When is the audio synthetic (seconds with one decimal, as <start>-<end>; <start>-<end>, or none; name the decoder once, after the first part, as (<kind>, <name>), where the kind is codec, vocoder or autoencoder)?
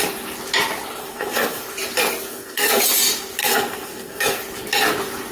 1.0-1.6 (codec, SNAC); 2.3-2.8; 3.4-4.4